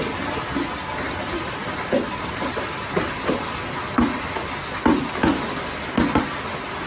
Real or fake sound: real